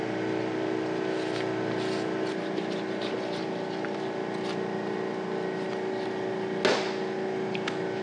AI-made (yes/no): no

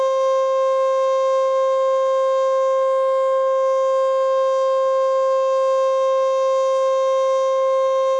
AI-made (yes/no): no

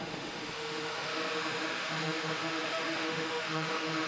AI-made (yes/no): yes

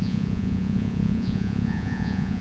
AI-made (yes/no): yes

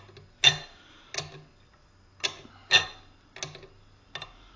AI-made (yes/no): no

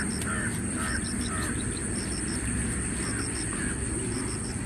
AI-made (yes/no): no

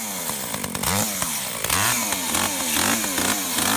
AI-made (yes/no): no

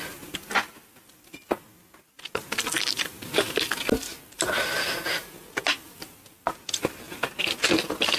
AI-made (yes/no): no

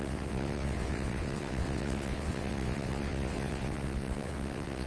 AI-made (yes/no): yes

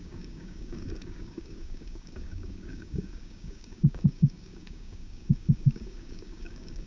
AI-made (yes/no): yes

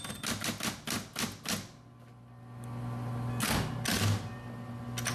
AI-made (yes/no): no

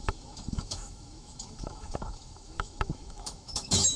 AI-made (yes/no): yes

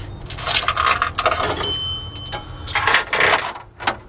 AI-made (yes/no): no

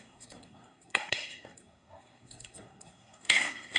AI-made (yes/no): yes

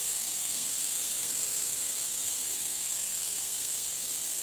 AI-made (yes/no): yes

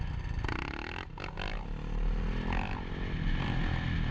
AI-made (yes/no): no